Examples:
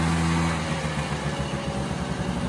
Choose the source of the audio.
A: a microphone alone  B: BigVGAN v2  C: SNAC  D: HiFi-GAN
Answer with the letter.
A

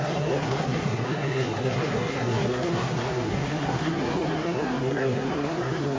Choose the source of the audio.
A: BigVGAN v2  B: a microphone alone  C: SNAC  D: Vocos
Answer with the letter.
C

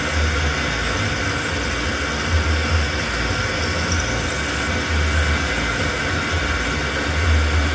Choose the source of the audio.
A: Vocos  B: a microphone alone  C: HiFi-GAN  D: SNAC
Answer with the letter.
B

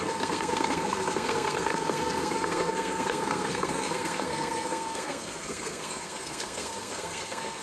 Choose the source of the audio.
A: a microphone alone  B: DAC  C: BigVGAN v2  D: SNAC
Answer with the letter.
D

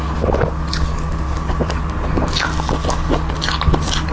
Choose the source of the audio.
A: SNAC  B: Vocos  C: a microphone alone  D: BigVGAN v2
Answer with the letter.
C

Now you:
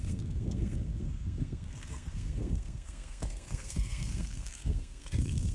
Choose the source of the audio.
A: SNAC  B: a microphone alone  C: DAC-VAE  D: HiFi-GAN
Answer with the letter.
A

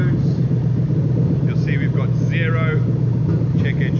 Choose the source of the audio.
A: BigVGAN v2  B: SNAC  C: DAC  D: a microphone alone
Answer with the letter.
D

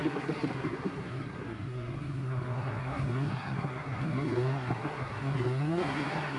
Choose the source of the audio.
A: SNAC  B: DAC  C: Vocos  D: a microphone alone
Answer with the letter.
A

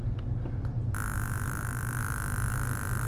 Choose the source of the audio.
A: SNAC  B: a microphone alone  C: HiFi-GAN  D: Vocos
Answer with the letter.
B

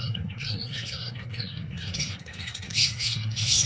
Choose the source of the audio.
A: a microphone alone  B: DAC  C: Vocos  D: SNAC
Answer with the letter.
D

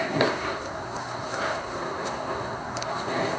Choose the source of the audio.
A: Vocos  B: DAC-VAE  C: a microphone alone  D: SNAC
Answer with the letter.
D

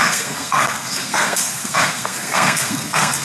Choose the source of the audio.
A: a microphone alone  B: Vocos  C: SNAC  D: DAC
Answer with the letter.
C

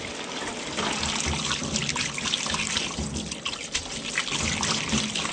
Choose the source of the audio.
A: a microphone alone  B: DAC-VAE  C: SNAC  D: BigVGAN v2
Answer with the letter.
A